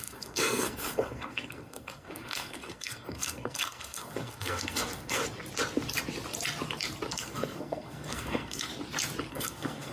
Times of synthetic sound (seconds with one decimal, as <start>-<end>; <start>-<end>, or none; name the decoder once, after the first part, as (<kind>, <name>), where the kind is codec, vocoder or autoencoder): 0.0-5.2 (codec, SNAC); 7.1-8.7; 9.3-9.9